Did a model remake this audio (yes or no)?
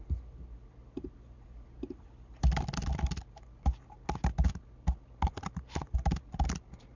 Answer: no